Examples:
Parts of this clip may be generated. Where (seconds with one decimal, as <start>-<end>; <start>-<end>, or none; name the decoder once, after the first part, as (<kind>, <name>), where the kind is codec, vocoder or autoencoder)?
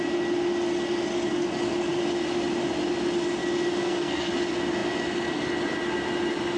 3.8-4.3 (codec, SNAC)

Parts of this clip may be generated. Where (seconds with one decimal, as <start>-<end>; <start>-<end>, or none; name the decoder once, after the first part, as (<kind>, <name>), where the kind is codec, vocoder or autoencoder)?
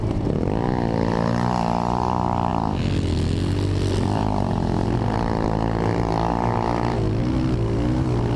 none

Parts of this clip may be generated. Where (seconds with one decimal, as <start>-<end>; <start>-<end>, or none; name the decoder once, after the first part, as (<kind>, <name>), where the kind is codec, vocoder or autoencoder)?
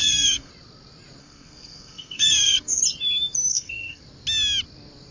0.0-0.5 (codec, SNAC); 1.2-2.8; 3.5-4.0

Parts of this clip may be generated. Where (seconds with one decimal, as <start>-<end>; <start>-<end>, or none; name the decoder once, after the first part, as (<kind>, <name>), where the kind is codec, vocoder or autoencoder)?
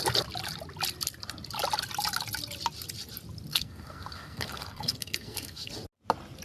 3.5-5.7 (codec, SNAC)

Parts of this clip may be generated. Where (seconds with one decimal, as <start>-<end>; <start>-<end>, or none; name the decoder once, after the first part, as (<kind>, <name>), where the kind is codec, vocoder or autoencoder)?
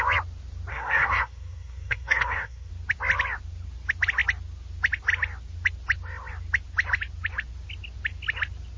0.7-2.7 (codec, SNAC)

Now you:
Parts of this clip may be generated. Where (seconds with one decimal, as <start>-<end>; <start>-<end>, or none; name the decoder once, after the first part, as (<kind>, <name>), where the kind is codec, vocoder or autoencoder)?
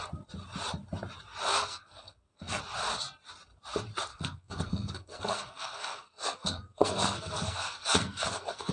1.5-2.6 (codec, SNAC); 4.1-8.7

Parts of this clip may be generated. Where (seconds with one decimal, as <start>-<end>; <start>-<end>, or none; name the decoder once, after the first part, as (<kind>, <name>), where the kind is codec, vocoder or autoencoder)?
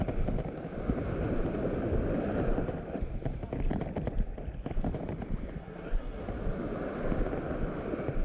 5.6-6.2 (codec, SNAC)